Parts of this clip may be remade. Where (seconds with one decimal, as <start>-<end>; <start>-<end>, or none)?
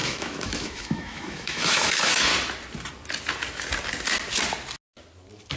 0.0-2.3